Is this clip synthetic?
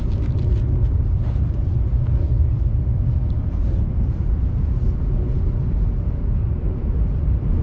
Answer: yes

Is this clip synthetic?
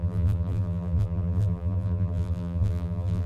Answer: yes